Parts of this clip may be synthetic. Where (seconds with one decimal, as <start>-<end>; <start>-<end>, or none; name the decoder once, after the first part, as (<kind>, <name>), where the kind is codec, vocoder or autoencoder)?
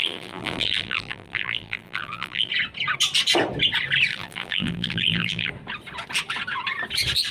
0.0-2.5 (vocoder, BigVGAN v2); 4.1-5.5